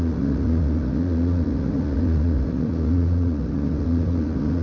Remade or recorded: remade